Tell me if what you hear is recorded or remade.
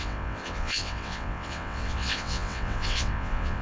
remade